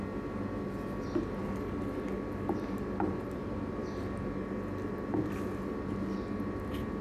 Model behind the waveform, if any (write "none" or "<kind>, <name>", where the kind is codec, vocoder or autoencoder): none